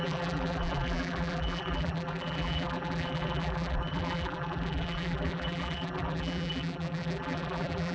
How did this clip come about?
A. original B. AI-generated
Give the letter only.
B